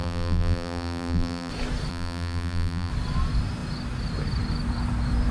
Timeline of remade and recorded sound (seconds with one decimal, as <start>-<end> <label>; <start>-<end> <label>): 0.0-1.5 remade; 1.5-1.9 recorded; 1.9-2.9 remade; 2.9-5.3 recorded

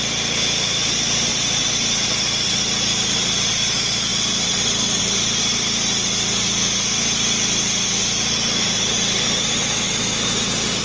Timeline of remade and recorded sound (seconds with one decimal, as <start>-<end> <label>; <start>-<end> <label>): 0.0-1.3 recorded; 1.3-3.5 remade; 3.5-10.8 recorded